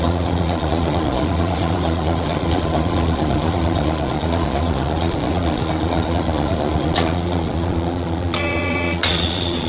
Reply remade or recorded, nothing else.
remade